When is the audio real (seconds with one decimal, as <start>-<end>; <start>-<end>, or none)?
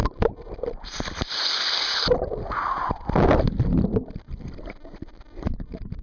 0.0-6.0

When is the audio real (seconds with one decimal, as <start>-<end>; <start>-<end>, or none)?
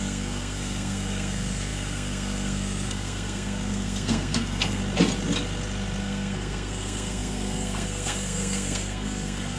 4.8-6.0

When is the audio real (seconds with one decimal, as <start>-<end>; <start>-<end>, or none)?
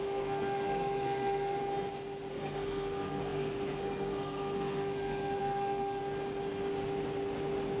1.6-2.3; 6.0-7.8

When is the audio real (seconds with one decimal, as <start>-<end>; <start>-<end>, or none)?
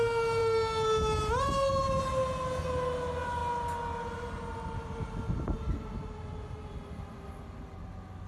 0.0-8.3